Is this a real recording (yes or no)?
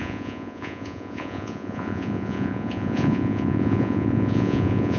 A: no